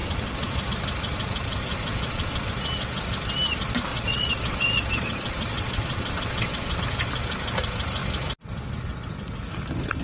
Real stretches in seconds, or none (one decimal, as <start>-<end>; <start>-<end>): 0.6-1.6; 2.5-3.9; 6.8-10.0